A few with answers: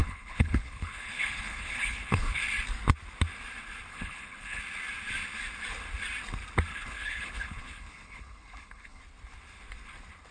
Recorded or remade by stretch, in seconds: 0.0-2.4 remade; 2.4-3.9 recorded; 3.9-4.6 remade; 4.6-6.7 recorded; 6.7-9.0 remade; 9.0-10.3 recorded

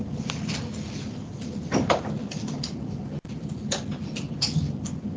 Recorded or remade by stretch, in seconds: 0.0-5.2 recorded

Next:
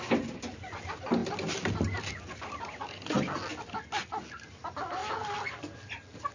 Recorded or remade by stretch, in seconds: 0.0-1.2 recorded; 1.2-2.4 remade; 2.4-6.3 recorded

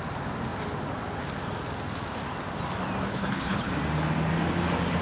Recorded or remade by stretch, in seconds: 0.0-3.1 recorded; 3.1-3.7 remade; 3.7-5.0 recorded

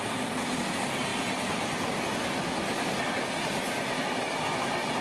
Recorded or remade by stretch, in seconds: 0.0-5.0 recorded